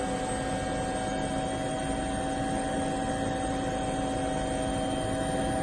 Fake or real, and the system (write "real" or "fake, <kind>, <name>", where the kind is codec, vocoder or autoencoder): real